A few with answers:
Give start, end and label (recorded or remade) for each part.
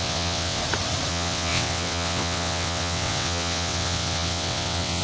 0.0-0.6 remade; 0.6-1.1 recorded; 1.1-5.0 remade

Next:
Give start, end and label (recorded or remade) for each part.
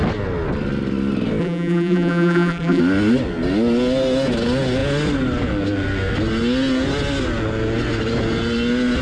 0.0-1.4 recorded; 1.4-2.8 remade; 2.8-9.0 recorded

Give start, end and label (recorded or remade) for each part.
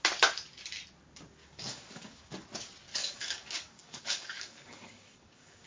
0.0-1.4 recorded; 1.4-2.3 remade; 2.3-2.9 recorded; 2.9-5.7 remade